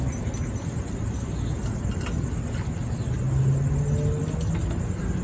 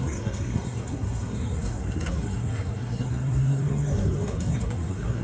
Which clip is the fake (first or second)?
second